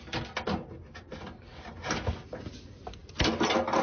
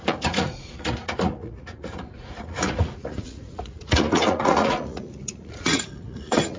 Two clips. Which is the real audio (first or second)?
first